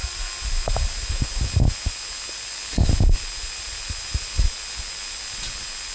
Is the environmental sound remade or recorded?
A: recorded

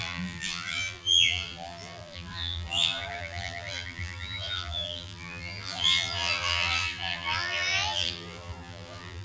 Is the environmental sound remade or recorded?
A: remade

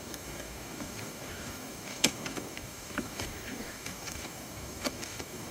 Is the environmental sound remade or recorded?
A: remade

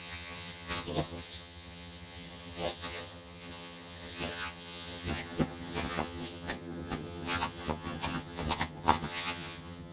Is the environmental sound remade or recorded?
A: remade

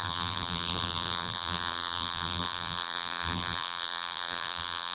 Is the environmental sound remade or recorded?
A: remade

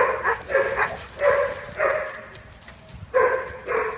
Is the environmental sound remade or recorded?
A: recorded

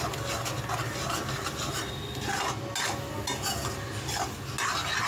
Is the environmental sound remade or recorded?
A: recorded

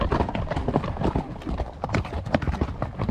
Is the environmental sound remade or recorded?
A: recorded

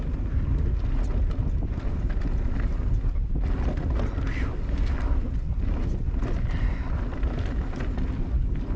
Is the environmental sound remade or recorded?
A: recorded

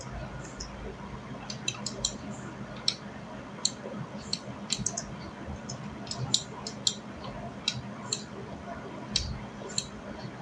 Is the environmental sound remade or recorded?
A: recorded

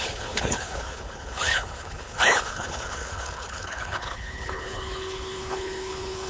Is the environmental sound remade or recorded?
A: remade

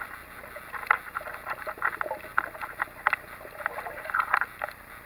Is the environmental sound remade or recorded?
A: recorded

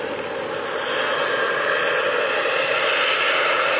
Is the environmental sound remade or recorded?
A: recorded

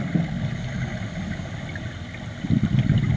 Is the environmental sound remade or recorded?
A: recorded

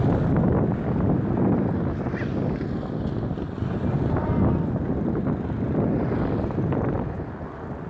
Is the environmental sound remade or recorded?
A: recorded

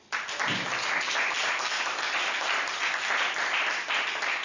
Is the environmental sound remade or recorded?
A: recorded